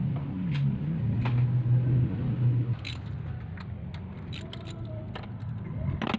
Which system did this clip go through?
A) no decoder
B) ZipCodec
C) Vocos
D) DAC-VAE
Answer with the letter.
A